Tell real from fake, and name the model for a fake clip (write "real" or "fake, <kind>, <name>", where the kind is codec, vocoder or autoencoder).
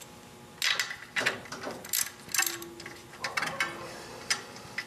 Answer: real